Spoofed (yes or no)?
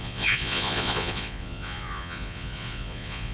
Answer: yes